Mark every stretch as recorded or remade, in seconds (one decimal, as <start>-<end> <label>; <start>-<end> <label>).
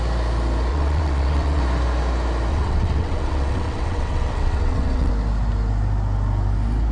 0.0-0.7 recorded; 0.7-1.6 remade; 1.6-2.5 recorded; 2.5-5.1 remade; 5.1-6.9 recorded